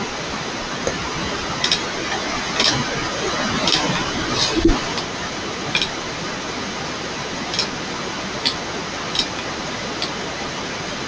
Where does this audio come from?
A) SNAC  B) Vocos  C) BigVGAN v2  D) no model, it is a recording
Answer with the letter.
D